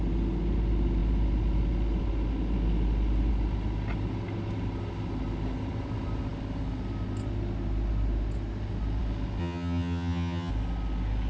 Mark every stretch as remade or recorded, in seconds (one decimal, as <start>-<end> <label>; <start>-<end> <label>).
0.0-9.4 recorded; 9.4-10.5 remade; 10.5-11.3 recorded